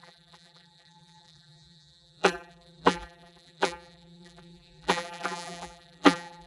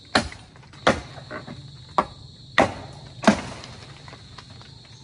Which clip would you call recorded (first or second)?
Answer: second